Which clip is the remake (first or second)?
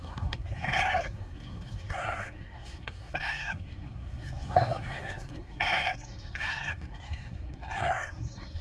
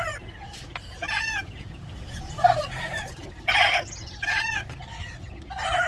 first